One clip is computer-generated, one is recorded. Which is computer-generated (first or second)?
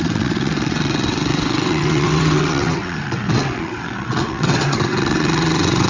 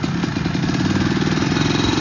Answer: first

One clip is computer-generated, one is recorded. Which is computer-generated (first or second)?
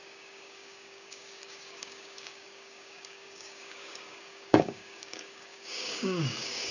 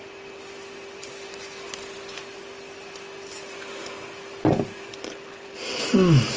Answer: first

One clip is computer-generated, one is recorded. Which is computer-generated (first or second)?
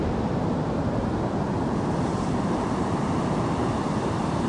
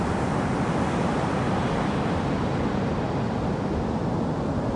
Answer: first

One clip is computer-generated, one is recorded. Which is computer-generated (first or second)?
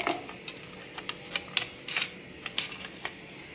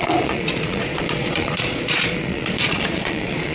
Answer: second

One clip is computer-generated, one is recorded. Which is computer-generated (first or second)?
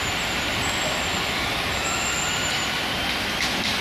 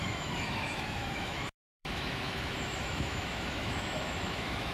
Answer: second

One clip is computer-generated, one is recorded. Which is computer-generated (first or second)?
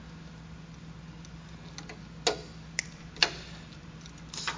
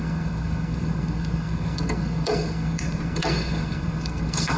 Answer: second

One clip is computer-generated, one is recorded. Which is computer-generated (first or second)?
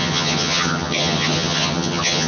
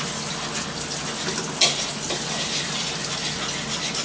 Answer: first